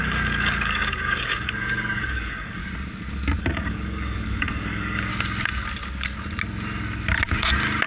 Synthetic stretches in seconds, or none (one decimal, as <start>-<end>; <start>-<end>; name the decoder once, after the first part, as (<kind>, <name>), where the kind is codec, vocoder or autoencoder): 0.0-2.6 (codec, DAC); 3.4-5.1